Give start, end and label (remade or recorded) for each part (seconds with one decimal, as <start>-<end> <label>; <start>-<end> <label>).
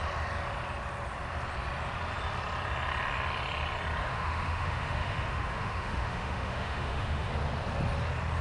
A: 0.0-4.0 recorded; 4.0-7.3 remade; 7.3-8.4 recorded